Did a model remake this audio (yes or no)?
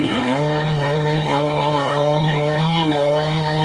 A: yes